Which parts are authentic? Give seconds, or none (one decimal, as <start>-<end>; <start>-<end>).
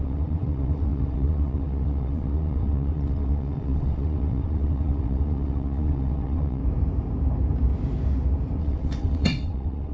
6.6-8.6